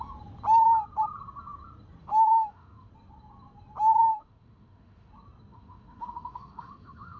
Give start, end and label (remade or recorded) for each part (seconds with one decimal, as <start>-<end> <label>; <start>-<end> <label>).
0.0-2.0 recorded; 2.0-2.9 remade; 2.9-4.1 recorded; 4.1-5.1 remade; 5.1-5.5 recorded; 5.5-7.2 remade